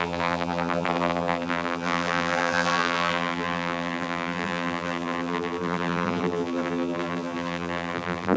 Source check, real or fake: fake